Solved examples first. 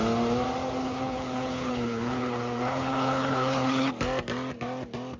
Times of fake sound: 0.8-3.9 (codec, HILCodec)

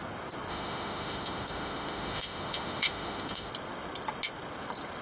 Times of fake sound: 0.5-3.5 (autoencoder, DAC-VAE)

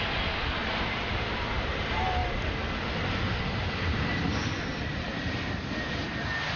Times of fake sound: none

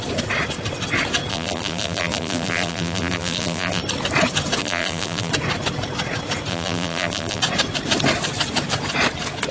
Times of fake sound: 1.3-3.8 (vocoder, BigVGAN v2); 4.6-5.3; 6.5-7.4

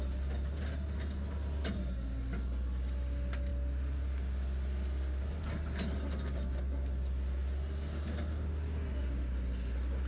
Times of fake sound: none